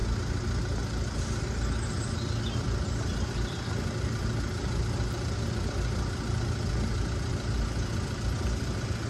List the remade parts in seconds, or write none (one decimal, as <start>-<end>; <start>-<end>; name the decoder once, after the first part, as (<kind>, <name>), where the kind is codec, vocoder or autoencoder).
none